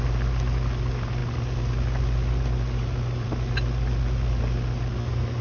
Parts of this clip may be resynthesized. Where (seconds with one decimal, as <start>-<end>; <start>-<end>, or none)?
none